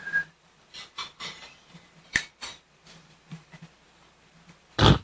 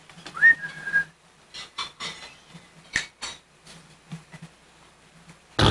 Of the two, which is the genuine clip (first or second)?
second